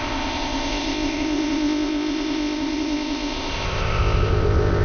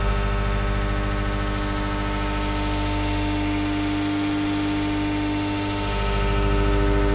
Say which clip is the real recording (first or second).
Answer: second